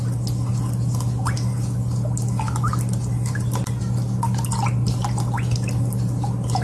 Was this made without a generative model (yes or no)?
yes